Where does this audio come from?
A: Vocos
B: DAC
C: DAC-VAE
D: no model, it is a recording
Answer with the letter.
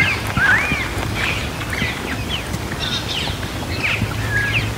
D